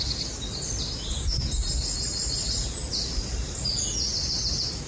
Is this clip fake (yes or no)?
no